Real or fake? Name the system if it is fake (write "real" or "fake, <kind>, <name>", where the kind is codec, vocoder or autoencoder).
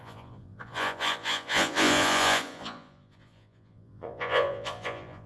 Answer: fake, vocoder, Vocos